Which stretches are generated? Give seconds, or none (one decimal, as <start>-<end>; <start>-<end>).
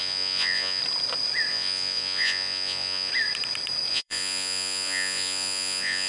0.0-0.8; 1.5-3.1; 3.9-6.1